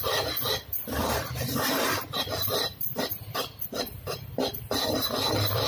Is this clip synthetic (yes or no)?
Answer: yes